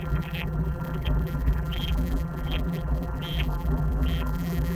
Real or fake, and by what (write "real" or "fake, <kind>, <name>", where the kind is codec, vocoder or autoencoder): fake, vocoder, BigVGAN v2